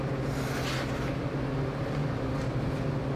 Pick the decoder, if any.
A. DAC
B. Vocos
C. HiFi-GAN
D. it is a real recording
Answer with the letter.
D